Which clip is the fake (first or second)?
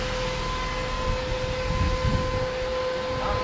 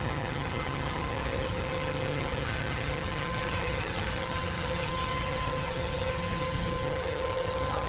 second